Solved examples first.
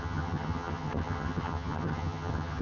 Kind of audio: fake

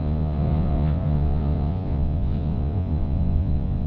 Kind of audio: fake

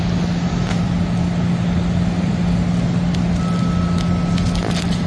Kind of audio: real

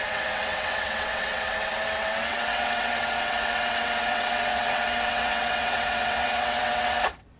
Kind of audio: fake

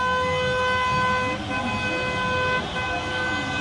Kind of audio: real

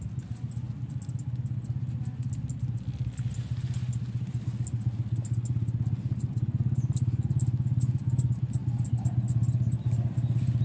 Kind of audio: real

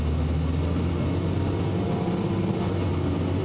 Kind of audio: real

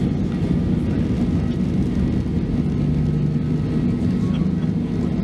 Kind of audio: real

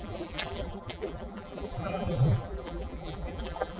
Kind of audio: fake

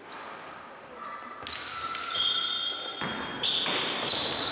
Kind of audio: real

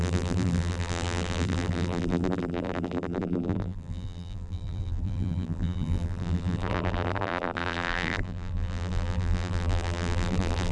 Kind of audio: fake